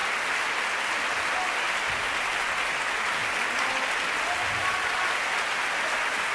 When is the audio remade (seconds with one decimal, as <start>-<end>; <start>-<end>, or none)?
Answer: none